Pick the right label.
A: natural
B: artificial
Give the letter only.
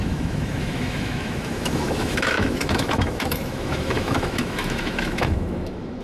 B